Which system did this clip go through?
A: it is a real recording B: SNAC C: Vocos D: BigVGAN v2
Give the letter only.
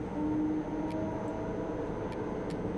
A